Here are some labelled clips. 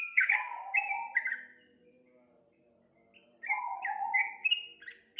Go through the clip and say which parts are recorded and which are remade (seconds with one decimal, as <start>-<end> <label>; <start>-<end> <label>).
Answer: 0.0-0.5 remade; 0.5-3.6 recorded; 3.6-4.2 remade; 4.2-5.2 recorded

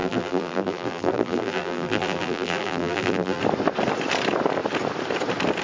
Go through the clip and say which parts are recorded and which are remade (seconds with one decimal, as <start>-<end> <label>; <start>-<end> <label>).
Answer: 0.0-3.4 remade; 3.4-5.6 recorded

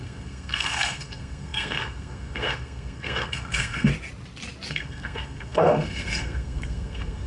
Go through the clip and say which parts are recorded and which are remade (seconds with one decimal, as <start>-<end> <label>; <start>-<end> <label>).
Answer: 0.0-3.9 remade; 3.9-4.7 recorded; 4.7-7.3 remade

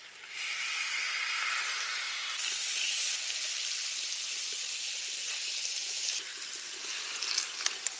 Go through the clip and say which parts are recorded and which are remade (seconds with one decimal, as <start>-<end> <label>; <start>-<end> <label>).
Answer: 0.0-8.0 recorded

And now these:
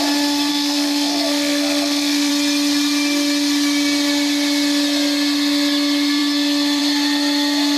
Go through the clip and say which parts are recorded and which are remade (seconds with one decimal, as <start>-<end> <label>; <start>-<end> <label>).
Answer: 0.0-0.5 recorded; 0.5-2.3 remade; 2.3-7.8 recorded